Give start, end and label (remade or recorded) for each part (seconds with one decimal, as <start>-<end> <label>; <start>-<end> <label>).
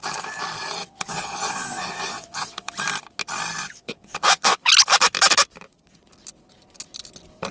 0.0-0.8 recorded; 0.8-2.7 remade; 2.7-3.6 recorded; 3.6-4.7 remade; 4.7-7.5 recorded